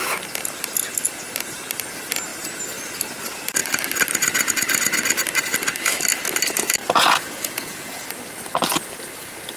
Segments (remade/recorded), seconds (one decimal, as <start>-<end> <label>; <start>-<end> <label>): 0.0-6.8 recorded; 6.8-8.0 remade; 8.0-9.6 recorded